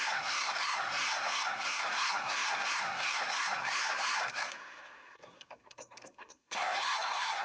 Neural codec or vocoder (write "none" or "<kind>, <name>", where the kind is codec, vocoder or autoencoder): codec, SNAC